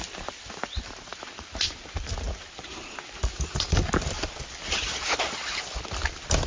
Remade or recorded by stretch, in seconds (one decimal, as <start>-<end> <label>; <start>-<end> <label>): 0.0-6.5 recorded